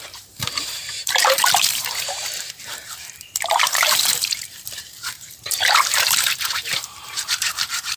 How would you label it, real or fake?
fake